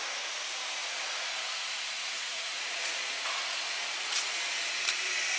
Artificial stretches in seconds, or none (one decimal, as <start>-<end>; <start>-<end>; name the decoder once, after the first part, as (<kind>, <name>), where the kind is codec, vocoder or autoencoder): 0.8-4.0 (vocoder, Vocos)